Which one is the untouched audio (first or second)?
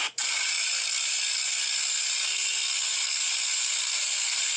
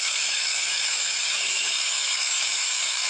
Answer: first